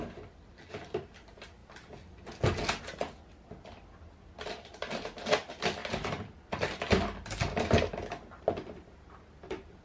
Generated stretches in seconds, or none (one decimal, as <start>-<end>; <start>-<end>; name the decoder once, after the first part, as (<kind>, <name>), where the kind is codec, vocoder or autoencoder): none